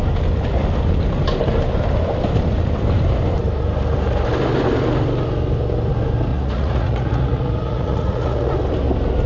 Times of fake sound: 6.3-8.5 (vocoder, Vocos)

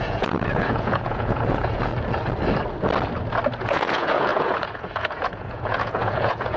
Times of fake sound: 0.0-1.9 (vocoder, Vocos); 3.6-6.6

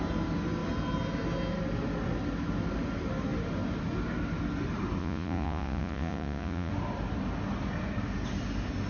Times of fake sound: 5.0-6.7 (vocoder, Vocos)